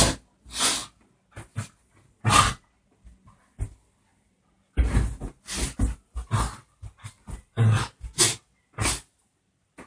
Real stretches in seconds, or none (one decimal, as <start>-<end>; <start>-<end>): 0.0-9.9